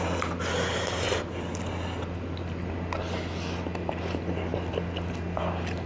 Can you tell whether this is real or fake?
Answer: real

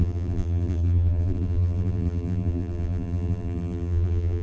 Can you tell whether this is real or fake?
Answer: fake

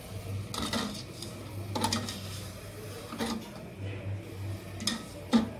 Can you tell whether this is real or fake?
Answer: real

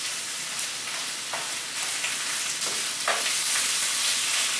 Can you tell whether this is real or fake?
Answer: real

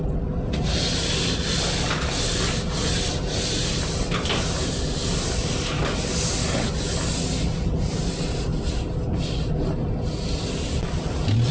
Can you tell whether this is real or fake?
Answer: real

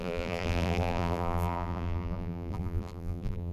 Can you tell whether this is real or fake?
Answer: fake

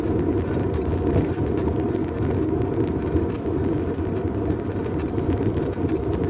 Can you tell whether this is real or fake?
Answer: real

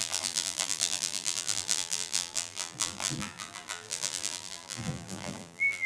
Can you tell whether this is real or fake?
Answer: fake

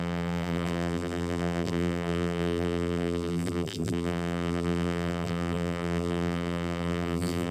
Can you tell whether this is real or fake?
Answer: fake